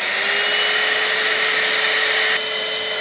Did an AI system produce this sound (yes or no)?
no